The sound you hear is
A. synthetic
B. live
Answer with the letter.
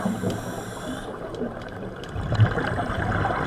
A